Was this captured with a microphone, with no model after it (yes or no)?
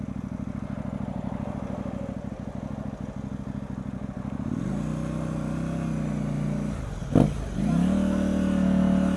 yes